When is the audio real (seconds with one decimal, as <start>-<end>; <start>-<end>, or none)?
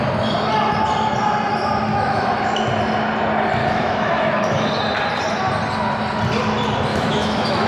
0.0-1.9; 2.6-3.6; 4.7-6.9